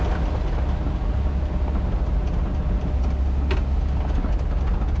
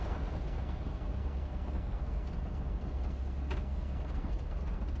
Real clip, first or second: first